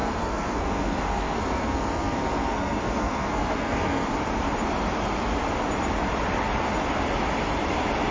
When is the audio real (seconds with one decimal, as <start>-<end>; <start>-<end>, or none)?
4.1-8.1